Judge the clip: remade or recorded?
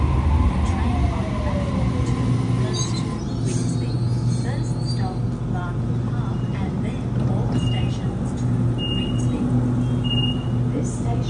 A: recorded